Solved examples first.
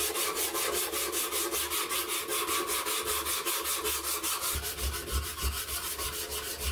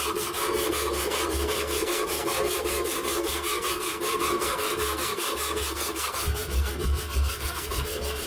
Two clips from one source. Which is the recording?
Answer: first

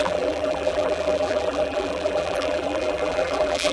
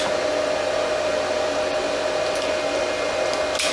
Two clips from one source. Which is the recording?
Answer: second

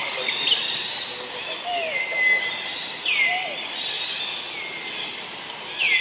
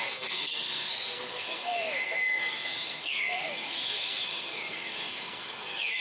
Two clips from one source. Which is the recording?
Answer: first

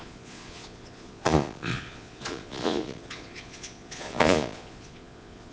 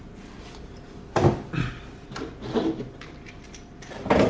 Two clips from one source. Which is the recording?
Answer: second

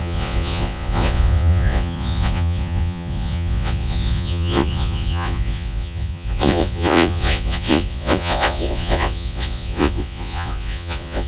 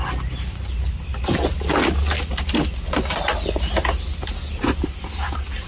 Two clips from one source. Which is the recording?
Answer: second